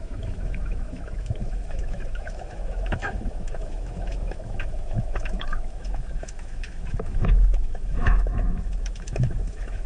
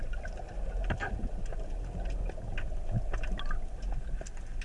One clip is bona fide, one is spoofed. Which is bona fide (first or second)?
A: second